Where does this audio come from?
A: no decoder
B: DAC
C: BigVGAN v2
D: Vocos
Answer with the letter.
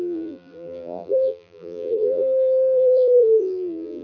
C